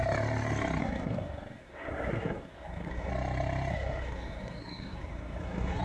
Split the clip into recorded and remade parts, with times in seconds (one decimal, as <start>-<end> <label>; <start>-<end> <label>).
0.0-0.8 recorded; 0.8-3.1 remade; 3.1-3.7 recorded; 3.7-5.8 remade